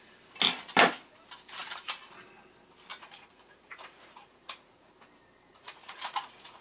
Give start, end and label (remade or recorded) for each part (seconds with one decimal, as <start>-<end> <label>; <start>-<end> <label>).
0.0-2.9 recorded; 2.9-4.9 remade; 4.9-5.5 recorded; 5.5-6.6 remade